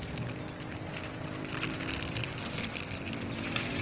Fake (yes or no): no